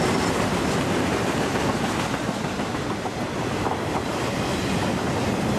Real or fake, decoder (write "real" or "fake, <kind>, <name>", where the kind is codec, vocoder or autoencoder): real